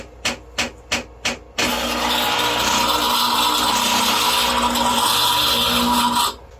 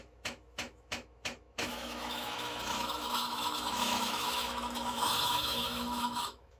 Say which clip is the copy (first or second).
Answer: second